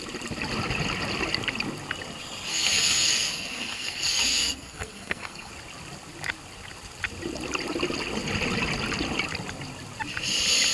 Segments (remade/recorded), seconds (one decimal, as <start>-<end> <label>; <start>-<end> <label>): 0.0-2.5 recorded; 2.5-5.5 remade; 5.5-10.7 recorded